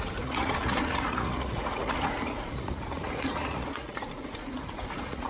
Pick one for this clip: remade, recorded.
remade